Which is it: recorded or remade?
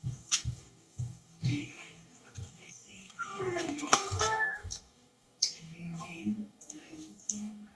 remade